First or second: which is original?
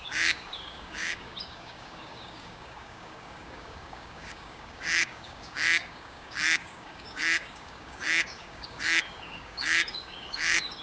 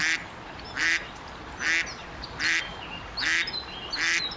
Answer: second